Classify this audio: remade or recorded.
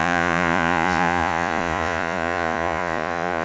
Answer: remade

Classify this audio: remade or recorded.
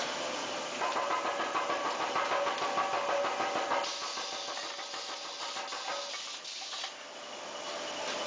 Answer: recorded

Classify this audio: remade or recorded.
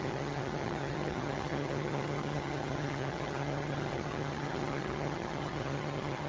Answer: remade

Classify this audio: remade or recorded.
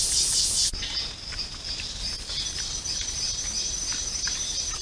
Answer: recorded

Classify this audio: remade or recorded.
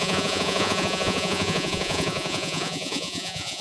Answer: remade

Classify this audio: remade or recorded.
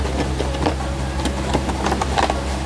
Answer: recorded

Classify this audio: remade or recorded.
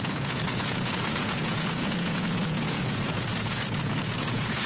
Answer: remade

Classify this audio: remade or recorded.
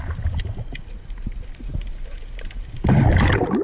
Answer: recorded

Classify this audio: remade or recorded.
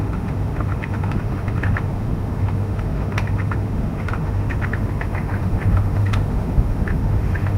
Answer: remade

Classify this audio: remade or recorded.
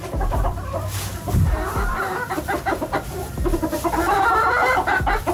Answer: remade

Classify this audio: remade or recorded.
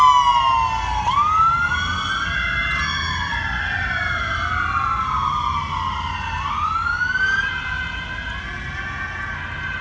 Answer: recorded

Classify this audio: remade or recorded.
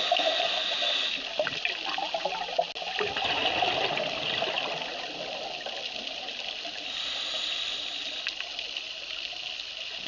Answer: recorded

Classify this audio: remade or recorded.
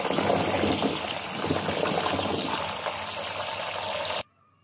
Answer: recorded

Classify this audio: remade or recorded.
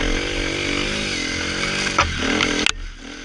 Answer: recorded